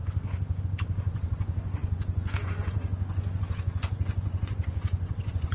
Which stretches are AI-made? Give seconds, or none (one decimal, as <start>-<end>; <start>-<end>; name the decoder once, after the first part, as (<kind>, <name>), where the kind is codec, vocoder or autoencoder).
0.0-5.5 (vocoder, Vocos)